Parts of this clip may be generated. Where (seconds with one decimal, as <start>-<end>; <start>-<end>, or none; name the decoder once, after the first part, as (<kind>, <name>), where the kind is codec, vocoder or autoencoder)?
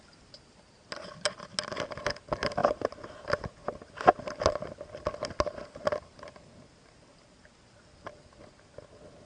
none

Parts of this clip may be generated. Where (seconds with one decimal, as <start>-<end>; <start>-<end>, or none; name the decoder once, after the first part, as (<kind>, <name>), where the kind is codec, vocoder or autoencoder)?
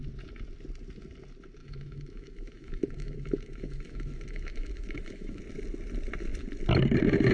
1.6-5.4 (autoencoder, DAC-VAE)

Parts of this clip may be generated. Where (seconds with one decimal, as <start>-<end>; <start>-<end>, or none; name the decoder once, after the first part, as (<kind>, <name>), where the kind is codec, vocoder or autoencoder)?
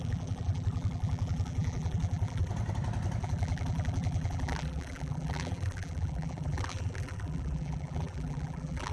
0.0-2.5 (vocoder, BigVGAN v2); 3.2-8.9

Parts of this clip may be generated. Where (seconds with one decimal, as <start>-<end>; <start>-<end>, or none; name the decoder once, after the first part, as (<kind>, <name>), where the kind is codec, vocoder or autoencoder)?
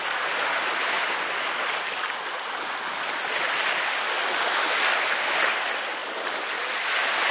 none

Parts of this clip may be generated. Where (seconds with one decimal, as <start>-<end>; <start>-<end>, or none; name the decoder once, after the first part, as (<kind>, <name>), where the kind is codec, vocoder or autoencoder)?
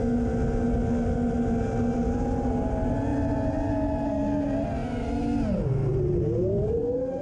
none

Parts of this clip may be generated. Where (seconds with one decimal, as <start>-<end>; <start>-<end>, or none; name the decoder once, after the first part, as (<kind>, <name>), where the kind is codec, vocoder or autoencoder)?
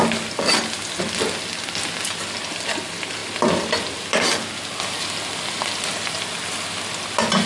none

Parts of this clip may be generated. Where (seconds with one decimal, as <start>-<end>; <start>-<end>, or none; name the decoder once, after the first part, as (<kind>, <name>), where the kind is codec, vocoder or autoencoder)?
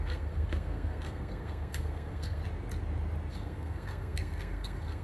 0.0-2.4 (codec, SNAC); 3.3-5.0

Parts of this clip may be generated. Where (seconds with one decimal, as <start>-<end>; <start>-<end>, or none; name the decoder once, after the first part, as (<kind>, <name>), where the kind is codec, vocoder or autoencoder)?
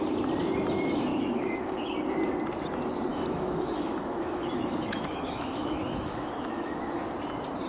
1.1-1.8 (autoencoder, DAC-VAE); 3.1-7.0